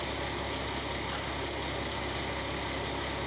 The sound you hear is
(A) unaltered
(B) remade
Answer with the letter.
A